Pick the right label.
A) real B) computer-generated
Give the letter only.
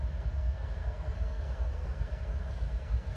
B